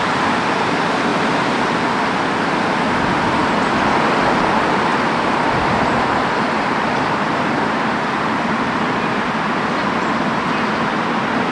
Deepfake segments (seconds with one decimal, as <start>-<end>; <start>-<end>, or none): 4.9-9.1